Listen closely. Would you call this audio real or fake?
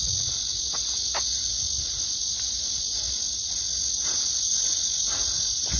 real